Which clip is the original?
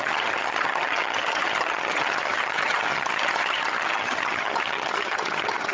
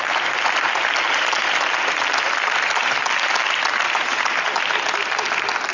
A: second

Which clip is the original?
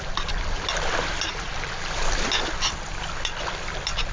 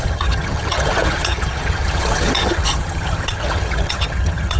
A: first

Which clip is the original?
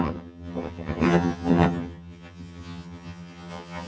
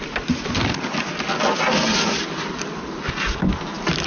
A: second